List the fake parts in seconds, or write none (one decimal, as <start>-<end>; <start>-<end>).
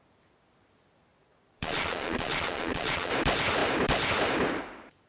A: 1.1-3.1